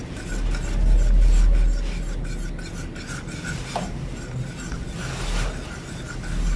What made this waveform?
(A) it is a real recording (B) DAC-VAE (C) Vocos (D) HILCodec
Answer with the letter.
A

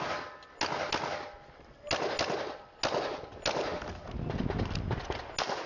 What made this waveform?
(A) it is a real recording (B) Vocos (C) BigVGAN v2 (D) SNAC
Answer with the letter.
A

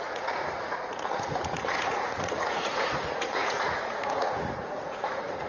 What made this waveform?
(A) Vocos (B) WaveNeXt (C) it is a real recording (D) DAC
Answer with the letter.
A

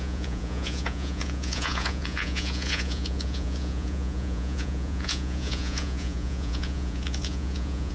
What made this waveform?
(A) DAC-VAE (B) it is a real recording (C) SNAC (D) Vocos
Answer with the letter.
D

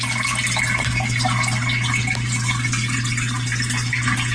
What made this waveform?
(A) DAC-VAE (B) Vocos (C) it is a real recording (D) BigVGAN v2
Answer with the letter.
C